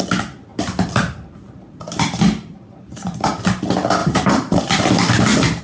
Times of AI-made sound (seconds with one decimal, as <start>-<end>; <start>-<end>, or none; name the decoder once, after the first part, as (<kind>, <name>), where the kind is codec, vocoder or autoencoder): 0.5-3.4 (vocoder, BigVGAN v2); 4.0-5.6